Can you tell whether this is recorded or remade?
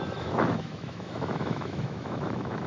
remade